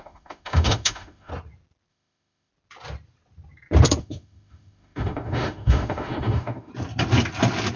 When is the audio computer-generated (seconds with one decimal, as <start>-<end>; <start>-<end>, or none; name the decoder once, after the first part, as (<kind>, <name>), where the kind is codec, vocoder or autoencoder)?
0.0-1.3 (autoencoder, DAC-VAE); 1.9-2.5; 4.0-6.7